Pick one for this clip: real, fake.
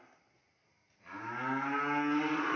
real